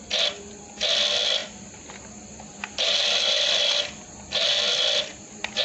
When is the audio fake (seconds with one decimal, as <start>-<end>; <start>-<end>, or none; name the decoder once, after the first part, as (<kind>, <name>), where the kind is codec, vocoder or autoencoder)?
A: none